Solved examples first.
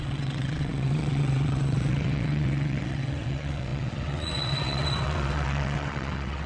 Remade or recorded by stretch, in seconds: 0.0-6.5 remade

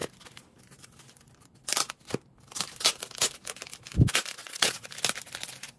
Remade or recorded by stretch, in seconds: 0.0-4.4 recorded; 4.4-4.9 remade; 4.9-5.8 recorded